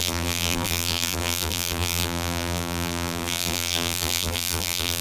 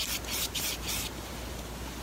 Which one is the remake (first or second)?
first